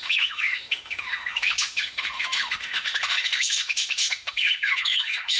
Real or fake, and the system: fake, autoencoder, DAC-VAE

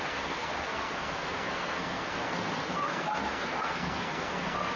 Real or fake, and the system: fake, codec, SNAC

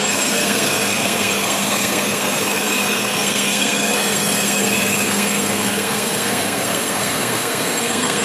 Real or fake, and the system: fake, codec, SNAC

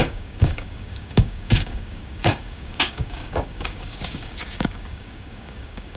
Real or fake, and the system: fake, codec, DAC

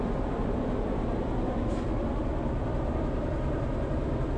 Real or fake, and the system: real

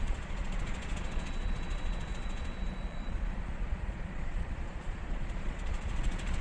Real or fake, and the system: fake, vocoder, Vocos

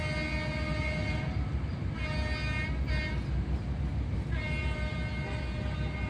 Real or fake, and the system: real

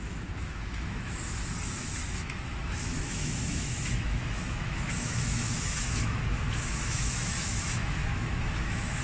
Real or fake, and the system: fake, autoencoder, DAC-VAE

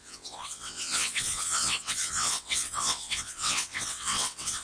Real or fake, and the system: fake, vocoder, WaveNeXt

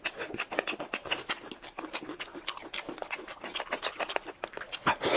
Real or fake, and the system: real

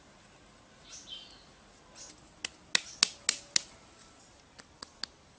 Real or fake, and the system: real